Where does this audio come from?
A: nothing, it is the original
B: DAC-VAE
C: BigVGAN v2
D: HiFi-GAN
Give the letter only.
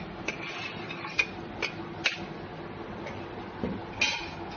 A